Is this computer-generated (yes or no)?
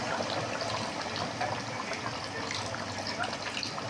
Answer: no